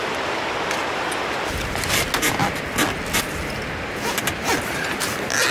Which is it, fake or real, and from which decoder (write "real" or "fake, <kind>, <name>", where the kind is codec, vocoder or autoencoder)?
real